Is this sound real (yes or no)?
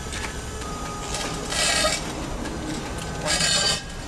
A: no